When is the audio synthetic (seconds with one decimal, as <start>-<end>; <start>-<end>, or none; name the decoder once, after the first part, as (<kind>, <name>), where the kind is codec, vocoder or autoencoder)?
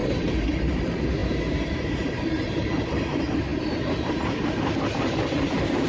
0.0-5.9 (vocoder, BigVGAN v2)